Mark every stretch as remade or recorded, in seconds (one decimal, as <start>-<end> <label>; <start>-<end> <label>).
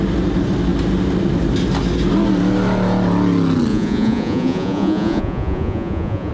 0.0-3.7 recorded; 3.7-6.3 remade